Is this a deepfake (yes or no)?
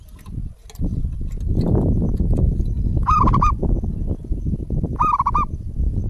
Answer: no